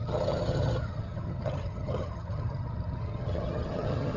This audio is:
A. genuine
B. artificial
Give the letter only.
B